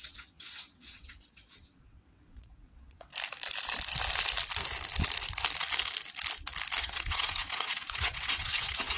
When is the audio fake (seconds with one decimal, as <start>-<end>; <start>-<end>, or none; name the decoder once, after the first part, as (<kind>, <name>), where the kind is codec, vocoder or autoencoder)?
0.0-3.1 (vocoder, WaveNeXt); 6.8-9.0

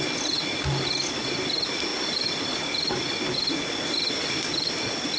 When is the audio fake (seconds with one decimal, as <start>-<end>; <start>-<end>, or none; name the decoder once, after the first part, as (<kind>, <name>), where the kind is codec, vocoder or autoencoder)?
none

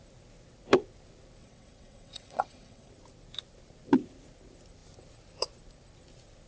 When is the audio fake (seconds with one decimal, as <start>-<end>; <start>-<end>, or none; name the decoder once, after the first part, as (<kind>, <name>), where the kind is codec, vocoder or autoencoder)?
1.4-2.9 (vocoder, WaveNeXt)

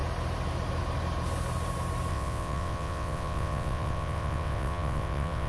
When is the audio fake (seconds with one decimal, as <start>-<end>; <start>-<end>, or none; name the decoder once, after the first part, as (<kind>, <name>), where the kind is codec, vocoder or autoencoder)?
2.1-5.5 (vocoder, WaveNeXt)

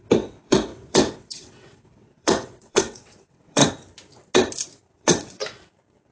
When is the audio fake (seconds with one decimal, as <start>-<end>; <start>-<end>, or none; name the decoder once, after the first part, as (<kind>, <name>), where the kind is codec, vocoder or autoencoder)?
0.0-3.6 (vocoder, WaveNeXt); 4.9-5.4

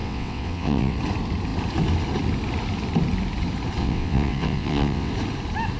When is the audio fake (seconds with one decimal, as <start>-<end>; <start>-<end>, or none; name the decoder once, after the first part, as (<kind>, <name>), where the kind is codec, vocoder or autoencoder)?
0.0-1.0 (vocoder, WaveNeXt); 3.8-5.1